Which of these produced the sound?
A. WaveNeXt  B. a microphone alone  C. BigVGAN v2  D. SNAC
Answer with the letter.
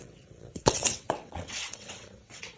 A